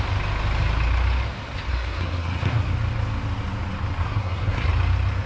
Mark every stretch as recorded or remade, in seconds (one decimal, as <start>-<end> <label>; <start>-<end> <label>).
0.0-1.7 recorded; 1.7-2.7 remade; 2.7-4.0 recorded; 4.0-4.7 remade; 4.7-5.3 recorded